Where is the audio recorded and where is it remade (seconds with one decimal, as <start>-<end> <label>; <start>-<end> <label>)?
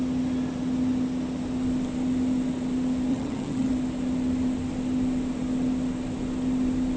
0.0-3.1 recorded; 3.1-3.7 remade; 3.7-7.0 recorded